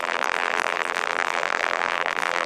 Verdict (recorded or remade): remade